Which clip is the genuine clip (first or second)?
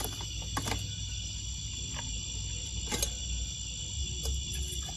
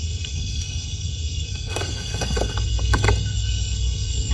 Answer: first